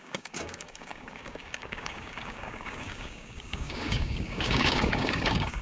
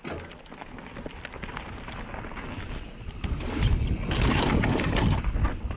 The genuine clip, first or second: second